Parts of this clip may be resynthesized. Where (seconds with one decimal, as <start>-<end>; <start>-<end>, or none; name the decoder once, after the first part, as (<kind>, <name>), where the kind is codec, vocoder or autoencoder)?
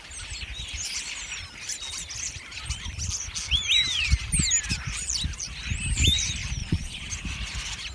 6.6-7.1 (vocoder, Vocos)